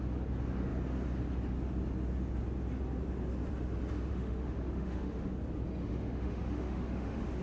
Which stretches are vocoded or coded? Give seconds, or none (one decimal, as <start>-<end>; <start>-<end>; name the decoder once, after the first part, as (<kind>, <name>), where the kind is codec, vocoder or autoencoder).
4.1-5.3 (autoencoder, DAC-VAE); 5.8-7.4